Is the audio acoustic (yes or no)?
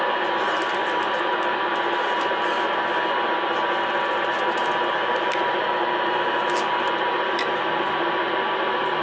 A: yes